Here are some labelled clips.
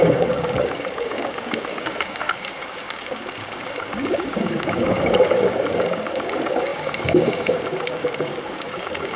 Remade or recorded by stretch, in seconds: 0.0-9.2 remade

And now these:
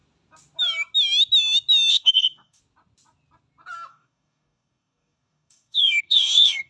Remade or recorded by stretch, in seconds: 0.0-1.9 recorded; 1.9-2.6 remade; 2.6-3.9 recorded; 3.9-6.7 remade

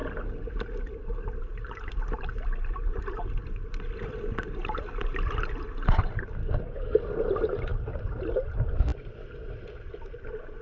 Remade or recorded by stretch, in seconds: 0.0-6.4 recorded; 6.4-7.0 remade; 7.0-10.6 recorded

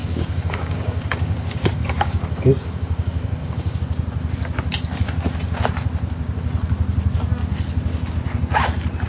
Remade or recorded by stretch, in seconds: 0.0-3.8 remade; 3.8-9.1 recorded